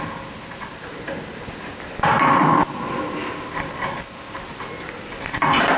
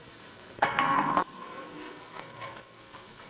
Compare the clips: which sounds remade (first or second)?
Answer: second